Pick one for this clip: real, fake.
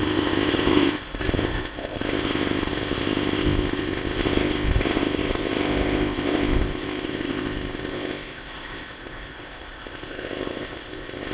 fake